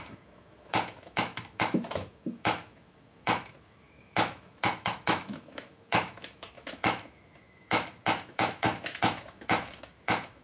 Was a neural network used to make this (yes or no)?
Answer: yes